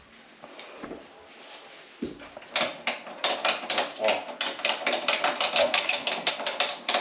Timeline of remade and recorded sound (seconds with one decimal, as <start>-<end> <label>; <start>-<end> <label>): 0.0-5.6 recorded; 5.6-6.3 remade; 6.3-7.0 recorded